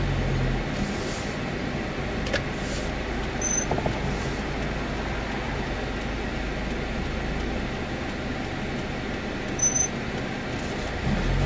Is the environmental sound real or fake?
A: real